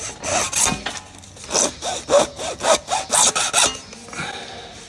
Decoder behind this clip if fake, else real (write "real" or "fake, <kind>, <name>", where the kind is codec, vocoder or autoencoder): real